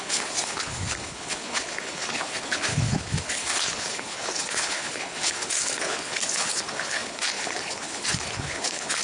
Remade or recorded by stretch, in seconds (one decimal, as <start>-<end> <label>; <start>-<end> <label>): 0.0-9.0 remade